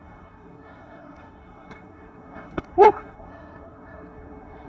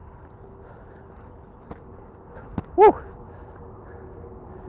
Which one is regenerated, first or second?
first